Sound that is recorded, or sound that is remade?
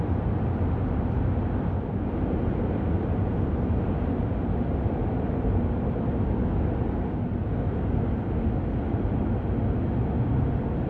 recorded